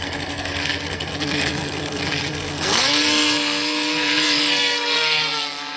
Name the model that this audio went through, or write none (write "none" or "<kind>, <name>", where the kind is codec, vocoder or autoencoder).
codec, SNAC